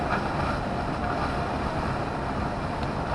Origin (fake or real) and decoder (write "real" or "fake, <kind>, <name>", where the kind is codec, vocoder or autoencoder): fake, vocoder, BigVGAN v2